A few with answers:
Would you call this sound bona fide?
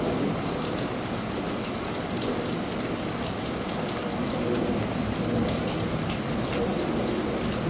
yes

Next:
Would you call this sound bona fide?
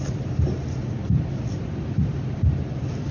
no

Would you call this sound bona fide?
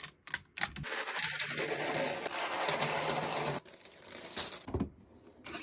yes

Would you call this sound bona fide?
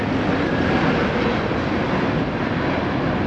yes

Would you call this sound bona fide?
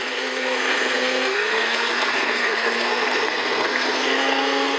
no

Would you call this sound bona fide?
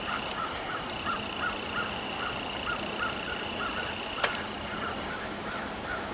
no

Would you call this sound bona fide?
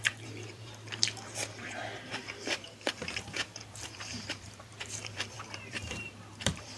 no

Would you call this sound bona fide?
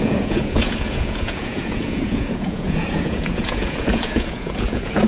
no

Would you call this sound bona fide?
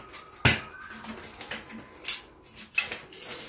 yes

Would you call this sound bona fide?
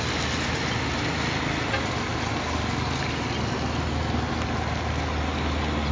yes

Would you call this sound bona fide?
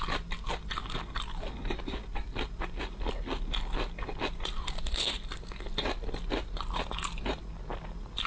yes